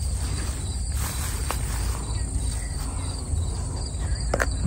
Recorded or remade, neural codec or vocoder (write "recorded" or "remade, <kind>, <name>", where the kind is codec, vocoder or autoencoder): recorded